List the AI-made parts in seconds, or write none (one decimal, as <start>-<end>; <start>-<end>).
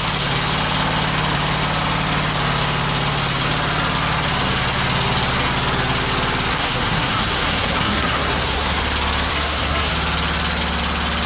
6.5-8.8; 9.3-9.9